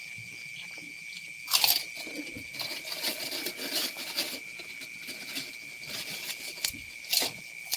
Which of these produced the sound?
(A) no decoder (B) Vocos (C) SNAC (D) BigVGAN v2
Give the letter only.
A